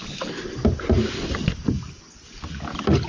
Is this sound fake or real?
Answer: real